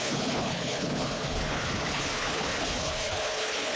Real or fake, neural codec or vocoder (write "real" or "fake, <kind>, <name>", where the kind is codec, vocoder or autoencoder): fake, codec, HILCodec